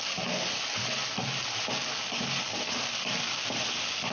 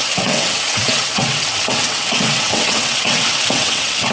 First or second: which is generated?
second